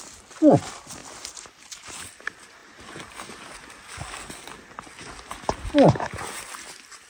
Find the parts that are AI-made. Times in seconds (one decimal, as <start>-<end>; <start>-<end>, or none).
none